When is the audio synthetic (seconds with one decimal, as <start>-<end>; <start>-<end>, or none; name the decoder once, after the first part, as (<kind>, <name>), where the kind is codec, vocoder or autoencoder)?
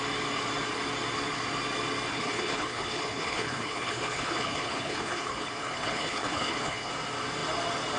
2.1-6.9 (codec, HILCodec)